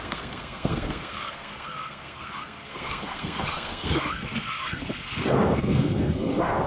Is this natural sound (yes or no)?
no